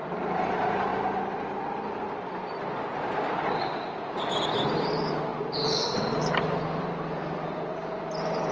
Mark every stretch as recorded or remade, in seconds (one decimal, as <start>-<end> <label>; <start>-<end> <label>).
0.0-0.9 remade; 0.9-2.4 recorded; 2.4-8.5 remade